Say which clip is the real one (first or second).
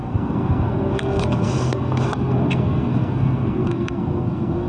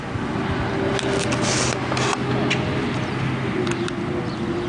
second